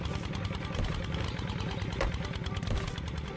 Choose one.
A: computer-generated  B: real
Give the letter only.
B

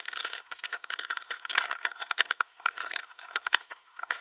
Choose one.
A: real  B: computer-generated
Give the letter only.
B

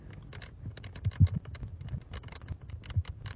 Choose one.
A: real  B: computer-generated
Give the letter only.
A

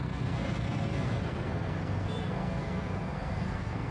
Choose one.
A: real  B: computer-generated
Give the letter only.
B